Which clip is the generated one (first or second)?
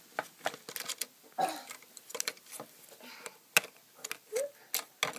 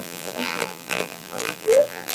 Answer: second